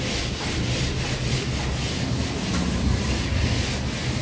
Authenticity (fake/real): real